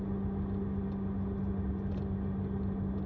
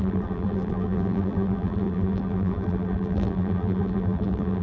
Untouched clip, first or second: first